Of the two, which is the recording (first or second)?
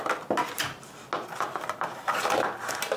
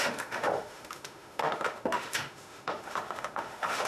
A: first